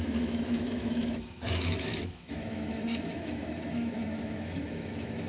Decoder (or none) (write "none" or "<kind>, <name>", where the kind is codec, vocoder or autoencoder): autoencoder, DAC-VAE